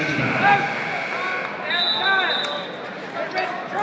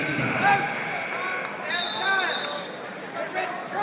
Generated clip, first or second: second